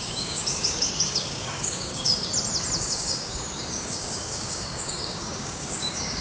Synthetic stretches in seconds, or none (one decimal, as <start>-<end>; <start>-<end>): 0.0-2.3; 2.8-6.2